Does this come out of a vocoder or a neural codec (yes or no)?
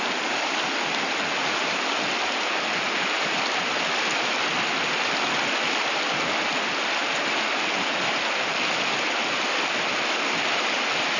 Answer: no